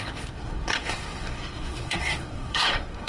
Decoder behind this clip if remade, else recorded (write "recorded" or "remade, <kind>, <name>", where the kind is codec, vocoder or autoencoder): remade, codec, SNAC